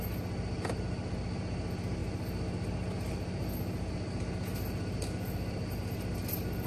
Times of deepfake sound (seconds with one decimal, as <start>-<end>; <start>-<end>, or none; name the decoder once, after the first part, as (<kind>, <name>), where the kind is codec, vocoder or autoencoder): none